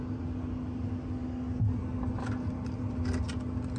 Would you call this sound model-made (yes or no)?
no